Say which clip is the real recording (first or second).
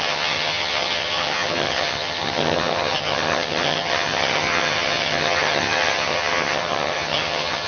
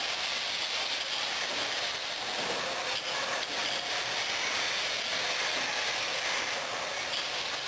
second